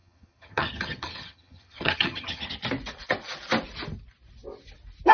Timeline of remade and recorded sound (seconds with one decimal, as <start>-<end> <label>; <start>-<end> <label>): 0.0-2.5 remade; 2.5-5.1 recorded